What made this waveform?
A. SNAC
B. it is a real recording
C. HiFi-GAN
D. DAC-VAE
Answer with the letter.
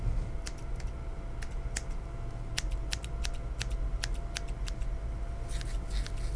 B